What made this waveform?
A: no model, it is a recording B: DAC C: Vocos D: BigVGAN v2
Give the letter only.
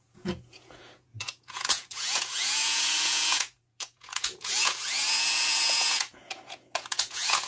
C